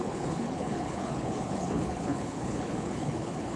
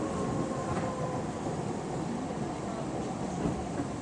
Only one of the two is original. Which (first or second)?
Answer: second